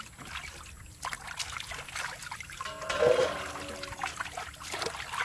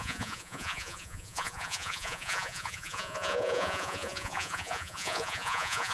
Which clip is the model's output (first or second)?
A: second